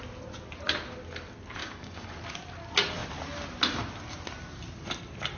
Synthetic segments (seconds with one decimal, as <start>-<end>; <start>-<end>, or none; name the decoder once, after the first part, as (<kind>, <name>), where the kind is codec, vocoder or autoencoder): 1.6-2.1 (codec, DAC)